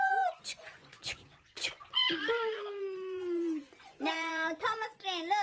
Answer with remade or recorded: remade